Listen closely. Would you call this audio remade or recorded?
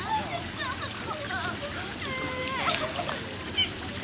recorded